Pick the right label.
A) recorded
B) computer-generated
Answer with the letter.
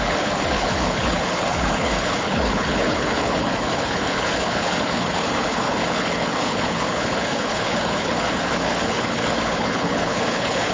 B